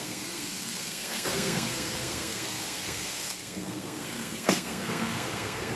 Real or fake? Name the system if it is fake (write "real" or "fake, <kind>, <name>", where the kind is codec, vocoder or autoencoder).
fake, codec, SNAC